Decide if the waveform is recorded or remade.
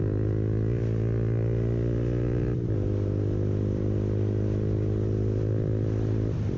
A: remade